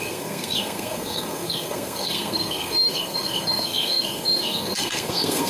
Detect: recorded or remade remade